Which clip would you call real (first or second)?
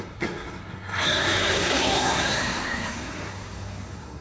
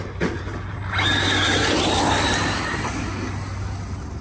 second